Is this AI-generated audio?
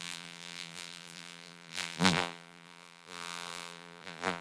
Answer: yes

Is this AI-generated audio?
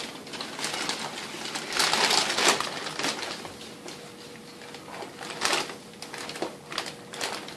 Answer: no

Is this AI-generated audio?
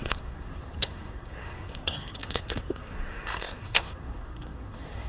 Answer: yes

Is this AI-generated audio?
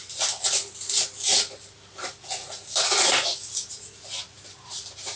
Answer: no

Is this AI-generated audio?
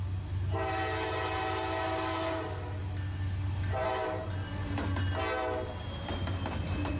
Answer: no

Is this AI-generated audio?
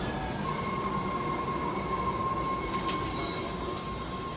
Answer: no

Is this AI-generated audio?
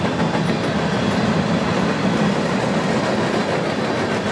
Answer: no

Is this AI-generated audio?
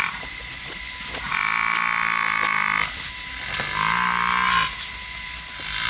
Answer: no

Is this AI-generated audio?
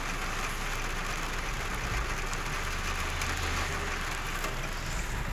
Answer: no